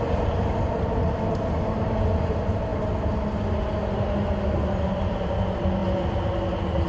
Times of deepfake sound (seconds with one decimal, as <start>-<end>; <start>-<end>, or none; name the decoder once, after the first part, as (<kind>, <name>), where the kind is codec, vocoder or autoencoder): none